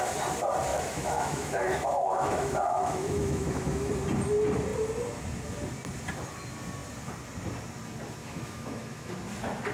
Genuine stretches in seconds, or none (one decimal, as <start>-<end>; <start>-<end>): 0.0-0.7; 3.9-8.2; 9.1-9.7